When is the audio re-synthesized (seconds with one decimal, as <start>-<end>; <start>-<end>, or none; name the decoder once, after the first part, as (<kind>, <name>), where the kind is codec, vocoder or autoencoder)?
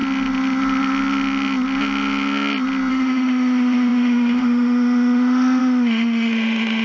2.9-6.8 (autoencoder, DAC-VAE)